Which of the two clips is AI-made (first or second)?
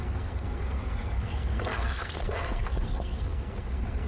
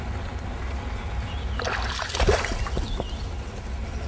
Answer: first